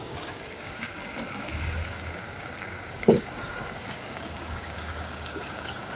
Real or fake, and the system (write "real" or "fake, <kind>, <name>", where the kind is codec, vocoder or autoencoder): fake, codec, DAC